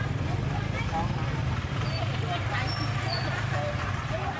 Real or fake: real